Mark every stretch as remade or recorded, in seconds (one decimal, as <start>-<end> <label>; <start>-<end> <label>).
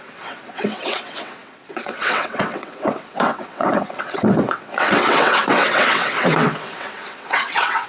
0.0-7.9 remade